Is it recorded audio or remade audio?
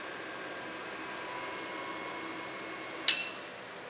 recorded